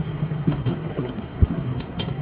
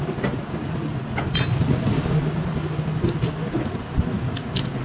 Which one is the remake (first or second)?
first